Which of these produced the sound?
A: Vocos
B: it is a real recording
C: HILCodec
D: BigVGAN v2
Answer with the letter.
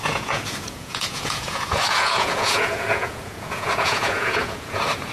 A